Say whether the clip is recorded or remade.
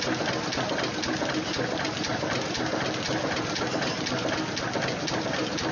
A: recorded